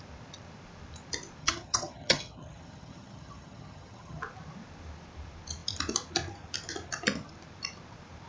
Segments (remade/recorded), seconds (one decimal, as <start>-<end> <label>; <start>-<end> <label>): 0.0-1.4 recorded; 1.4-4.2 remade; 4.2-8.3 recorded